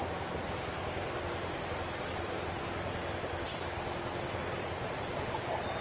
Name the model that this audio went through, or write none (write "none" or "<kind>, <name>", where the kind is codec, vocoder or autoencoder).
none